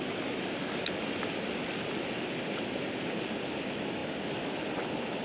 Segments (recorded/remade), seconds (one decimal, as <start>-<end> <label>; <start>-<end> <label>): 0.0-5.2 recorded